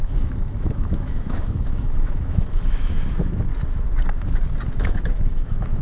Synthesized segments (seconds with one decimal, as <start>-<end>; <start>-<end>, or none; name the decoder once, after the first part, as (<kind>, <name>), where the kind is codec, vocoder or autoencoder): 0.0-3.5 (autoencoder, DAC-VAE); 4.8-5.8